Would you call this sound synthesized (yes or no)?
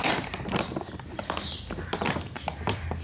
yes